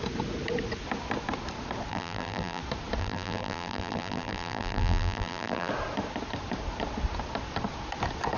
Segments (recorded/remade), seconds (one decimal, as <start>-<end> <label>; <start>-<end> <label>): 0.0-1.9 recorded; 1.9-2.6 remade; 2.6-3.0 recorded; 3.0-5.7 remade; 5.7-8.4 recorded